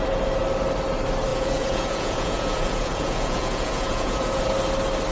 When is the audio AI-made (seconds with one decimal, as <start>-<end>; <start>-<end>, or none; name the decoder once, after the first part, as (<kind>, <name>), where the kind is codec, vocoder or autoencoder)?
1.3-4.4 (vocoder, Vocos)